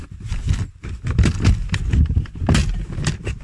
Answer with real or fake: real